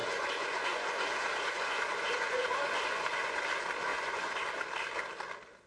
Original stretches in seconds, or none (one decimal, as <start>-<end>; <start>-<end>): 3.4-3.9; 4.4-5.7